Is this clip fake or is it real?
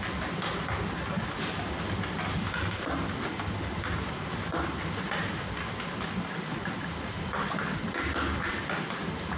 real